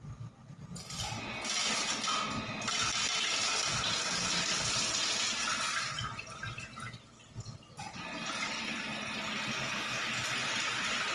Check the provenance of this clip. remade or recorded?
recorded